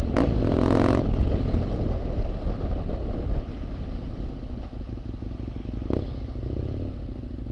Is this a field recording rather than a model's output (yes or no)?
yes